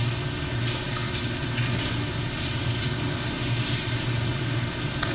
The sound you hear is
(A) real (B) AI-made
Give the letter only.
A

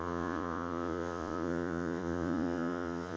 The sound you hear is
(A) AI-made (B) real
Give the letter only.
A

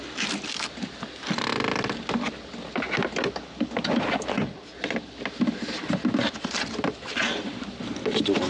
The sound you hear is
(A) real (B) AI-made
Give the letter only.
A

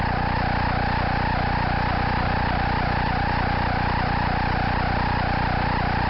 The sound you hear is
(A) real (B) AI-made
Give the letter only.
A